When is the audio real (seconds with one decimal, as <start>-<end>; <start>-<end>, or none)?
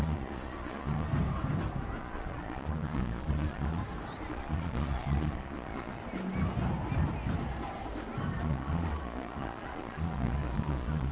1.1-2.0; 3.8-4.3; 6.0-8.4